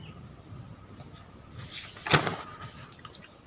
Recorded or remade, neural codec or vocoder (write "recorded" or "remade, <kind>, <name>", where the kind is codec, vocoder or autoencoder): recorded